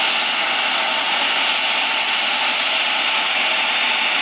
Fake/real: real